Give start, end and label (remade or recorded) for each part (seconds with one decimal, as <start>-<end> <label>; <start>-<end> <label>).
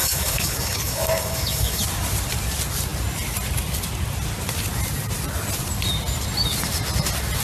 0.0-1.8 remade; 1.8-7.4 recorded